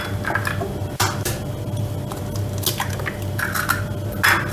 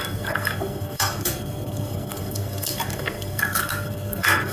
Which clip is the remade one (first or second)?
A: second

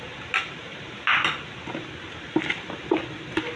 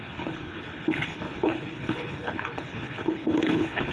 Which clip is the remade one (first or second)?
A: second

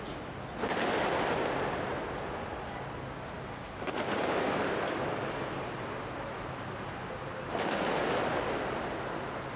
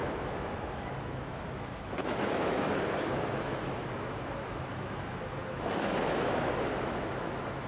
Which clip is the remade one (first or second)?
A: second